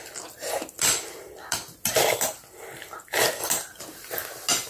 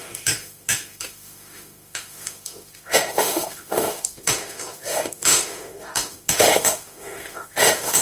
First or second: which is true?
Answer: first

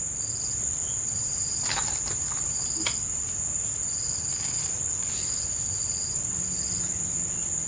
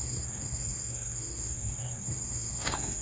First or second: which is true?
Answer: first